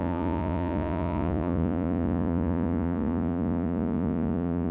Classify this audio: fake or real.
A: fake